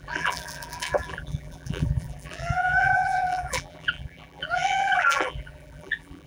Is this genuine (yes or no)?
no